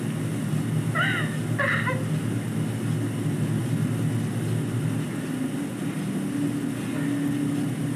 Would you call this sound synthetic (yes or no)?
no